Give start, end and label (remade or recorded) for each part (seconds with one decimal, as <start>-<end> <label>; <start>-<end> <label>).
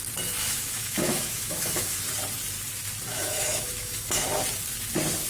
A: 0.0-0.4 recorded; 0.4-2.0 remade; 2.0-3.1 recorded; 3.1-4.3 remade; 4.3-5.3 recorded